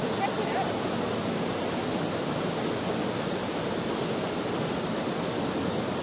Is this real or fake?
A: real